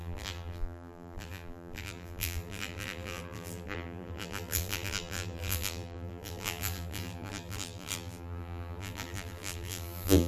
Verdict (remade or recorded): remade